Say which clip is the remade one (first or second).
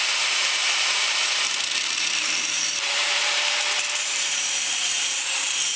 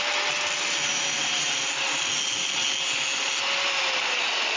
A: first